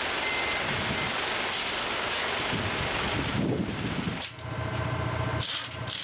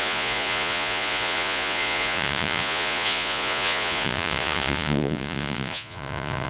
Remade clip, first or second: second